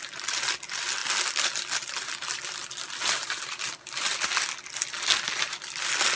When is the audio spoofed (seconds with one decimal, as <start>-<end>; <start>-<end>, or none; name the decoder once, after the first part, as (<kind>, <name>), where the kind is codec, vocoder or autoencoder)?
none